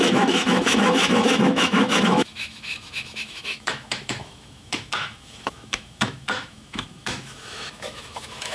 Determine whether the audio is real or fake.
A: fake